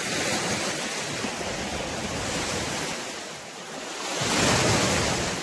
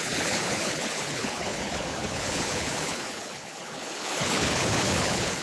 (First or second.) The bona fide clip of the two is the first